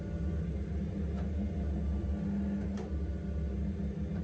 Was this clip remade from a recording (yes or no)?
no